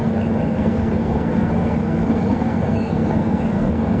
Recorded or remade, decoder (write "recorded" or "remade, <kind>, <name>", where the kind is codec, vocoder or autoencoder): remade, codec, SNAC